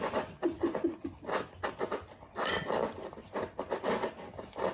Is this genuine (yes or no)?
yes